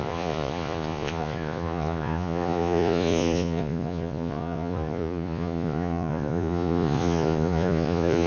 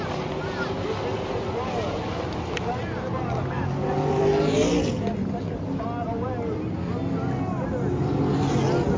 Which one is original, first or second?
second